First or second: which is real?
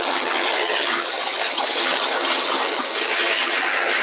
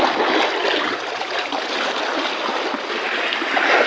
second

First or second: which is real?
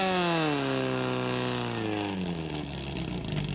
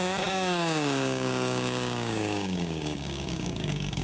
first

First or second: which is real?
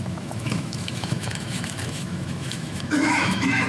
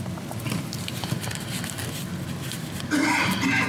second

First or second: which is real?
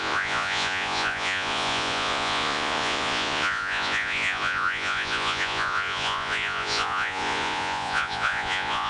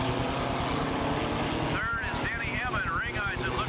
second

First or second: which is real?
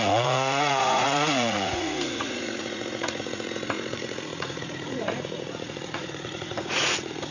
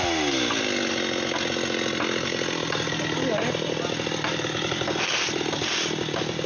second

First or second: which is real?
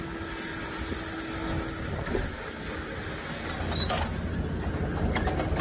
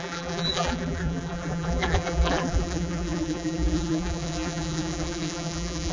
first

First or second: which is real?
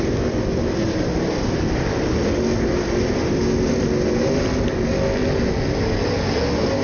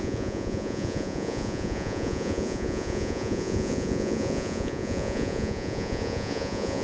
first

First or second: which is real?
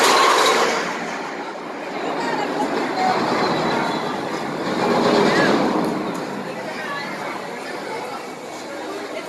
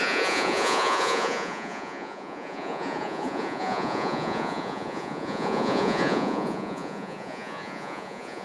first